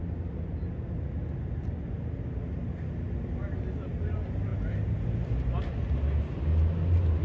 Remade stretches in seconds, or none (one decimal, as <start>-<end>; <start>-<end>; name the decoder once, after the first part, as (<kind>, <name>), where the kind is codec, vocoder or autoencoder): none